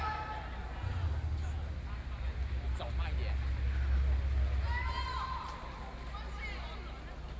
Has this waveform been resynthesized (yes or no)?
no